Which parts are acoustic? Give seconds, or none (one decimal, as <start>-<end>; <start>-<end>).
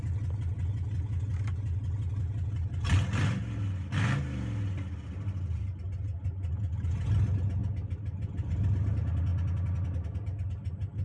0.0-11.0